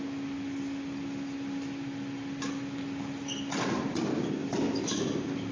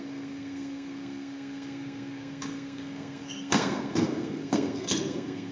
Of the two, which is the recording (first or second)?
first